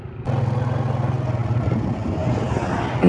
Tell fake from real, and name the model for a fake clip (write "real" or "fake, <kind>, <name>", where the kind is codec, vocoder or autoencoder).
real